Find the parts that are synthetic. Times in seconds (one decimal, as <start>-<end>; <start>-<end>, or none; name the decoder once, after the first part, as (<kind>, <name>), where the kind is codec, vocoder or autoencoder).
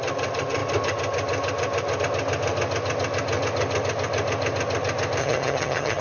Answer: 5.2-6.0 (vocoder, HiFi-GAN)